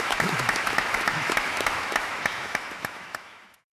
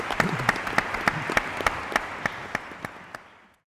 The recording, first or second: second